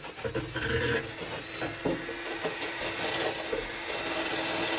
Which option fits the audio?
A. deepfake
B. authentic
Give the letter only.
B